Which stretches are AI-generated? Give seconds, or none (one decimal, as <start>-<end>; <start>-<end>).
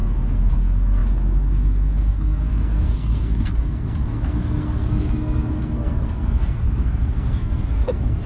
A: 0.0-8.3